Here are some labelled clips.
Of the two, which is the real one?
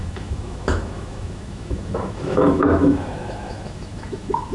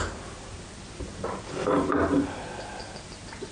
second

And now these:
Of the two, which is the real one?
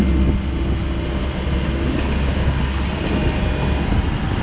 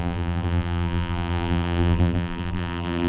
first